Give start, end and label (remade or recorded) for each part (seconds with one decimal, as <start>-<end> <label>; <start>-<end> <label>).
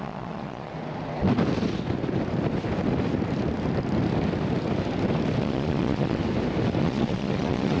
0.0-0.7 remade; 0.7-5.4 recorded; 5.4-6.2 remade; 6.2-6.8 recorded; 6.8-7.8 remade